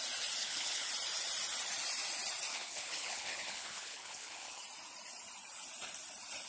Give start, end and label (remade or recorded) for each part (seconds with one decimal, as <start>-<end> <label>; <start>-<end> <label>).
0.0-0.4 recorded; 0.4-0.9 remade; 0.9-2.5 recorded; 2.5-4.6 remade; 4.6-6.5 recorded